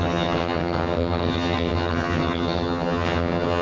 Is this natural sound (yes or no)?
no